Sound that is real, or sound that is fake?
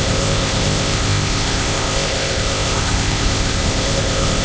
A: fake